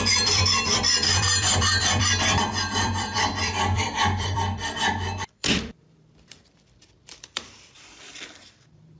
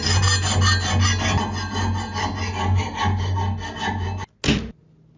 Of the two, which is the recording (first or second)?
second